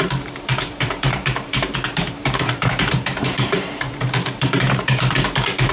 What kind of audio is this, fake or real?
fake